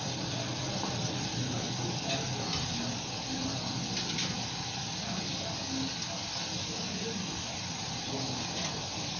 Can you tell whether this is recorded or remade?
recorded